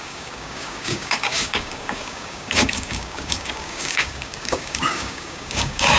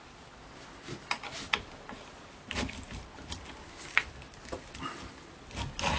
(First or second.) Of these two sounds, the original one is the second